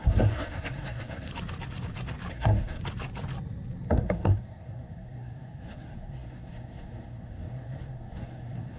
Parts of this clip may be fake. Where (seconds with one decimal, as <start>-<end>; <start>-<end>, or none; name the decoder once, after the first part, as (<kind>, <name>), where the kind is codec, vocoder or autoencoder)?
0.0-1.3 (codec, SNAC); 2.3-2.8; 3.9-8.8